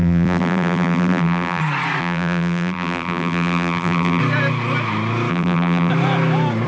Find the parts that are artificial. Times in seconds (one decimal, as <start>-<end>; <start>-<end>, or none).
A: 0.0-1.6; 2.0-4.2; 5.3-5.9